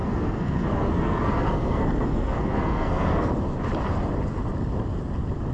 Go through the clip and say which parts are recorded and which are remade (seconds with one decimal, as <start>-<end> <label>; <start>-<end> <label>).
0.0-3.3 remade; 3.3-5.5 recorded